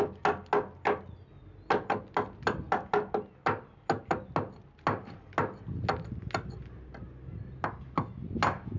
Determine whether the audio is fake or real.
real